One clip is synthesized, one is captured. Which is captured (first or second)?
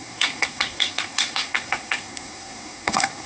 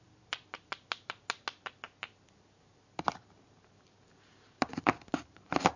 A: second